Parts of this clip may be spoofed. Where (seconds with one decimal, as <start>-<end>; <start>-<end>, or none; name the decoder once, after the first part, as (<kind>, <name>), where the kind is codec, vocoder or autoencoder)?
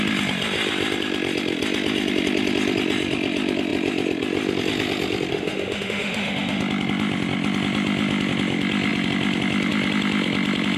5.3-6.6 (autoencoder, DAC-VAE)